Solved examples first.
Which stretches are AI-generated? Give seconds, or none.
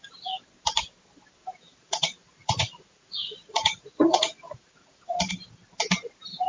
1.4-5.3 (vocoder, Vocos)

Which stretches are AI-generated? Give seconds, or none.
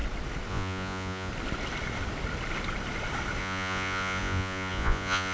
0.5-1.3 (vocoder, Vocos); 3.4-5.3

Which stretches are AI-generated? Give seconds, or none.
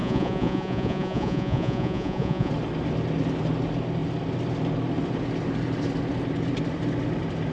0.0-2.5 (vocoder, Vocos)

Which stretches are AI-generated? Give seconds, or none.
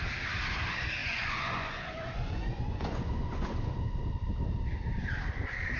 1.0-3.7 (vocoder, Vocos)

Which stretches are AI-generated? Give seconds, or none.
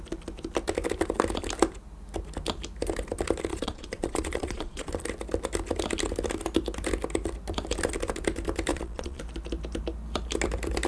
3.5-4.9 (vocoder, Vocos); 8.7-9.2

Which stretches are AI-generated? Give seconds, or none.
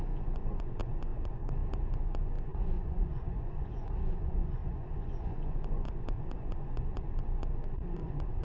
0.0-1.4 (vocoder, Vocos); 2.0-8.4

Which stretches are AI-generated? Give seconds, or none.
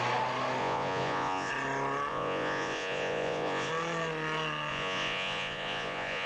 0.6-1.5 (vocoder, Vocos); 2.1-3.7; 4.7-6.3